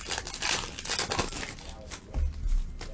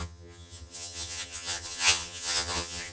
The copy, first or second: second